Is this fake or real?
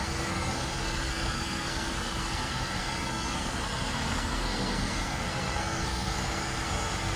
fake